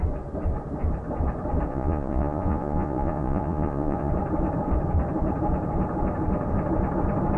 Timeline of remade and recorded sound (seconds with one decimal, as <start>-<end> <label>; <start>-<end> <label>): 0.0-1.7 recorded; 1.7-4.1 remade; 4.1-7.4 recorded